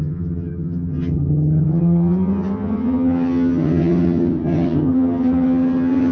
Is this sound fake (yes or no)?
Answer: yes